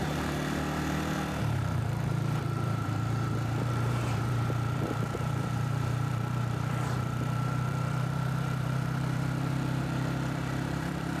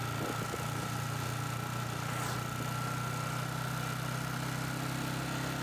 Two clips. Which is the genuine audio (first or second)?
second